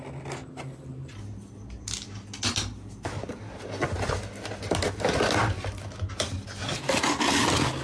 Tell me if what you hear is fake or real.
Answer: real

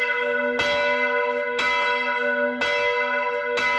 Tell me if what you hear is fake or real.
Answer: real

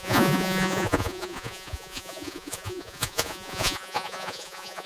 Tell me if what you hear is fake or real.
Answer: fake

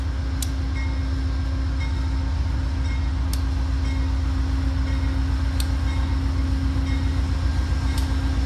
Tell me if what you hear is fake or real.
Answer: real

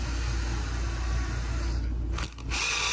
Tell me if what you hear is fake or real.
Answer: real